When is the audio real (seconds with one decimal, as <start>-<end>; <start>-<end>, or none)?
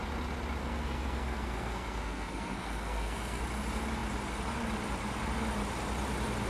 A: 0.0-0.6; 3.4-6.5